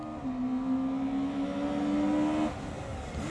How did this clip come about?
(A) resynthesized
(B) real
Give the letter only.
B